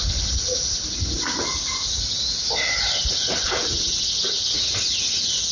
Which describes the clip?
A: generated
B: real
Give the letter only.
B